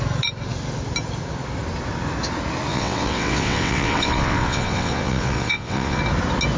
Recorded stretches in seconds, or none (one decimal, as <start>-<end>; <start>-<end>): 0.0-2.7; 6.0-6.6